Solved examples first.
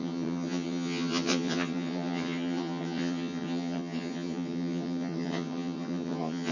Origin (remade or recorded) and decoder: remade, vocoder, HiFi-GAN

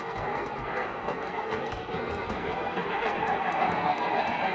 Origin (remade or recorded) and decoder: remade, codec, SNAC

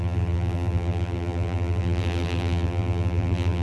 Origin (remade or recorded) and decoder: remade, vocoder, BigVGAN v2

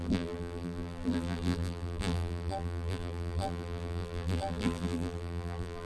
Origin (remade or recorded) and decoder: remade, vocoder, BigVGAN v2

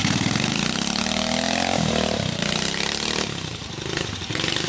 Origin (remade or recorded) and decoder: remade, vocoder, BigVGAN v2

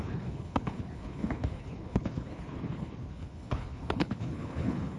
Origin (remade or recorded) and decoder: remade, codec, HILCodec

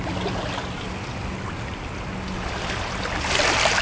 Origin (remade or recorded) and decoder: recorded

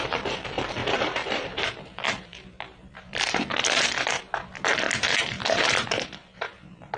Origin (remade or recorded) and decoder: remade, vocoder, BigVGAN v2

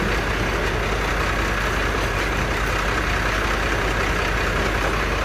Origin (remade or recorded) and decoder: recorded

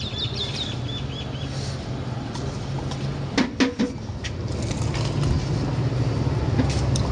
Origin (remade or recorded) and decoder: recorded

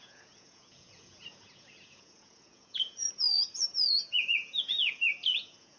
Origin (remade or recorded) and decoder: remade, vocoder, Vocos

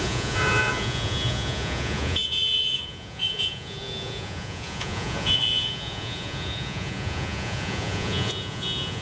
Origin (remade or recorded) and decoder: remade, vocoder, Vocos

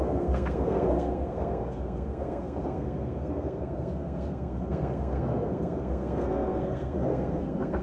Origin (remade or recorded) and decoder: remade, codec, SNAC